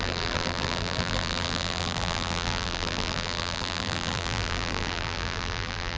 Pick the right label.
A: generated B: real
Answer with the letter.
A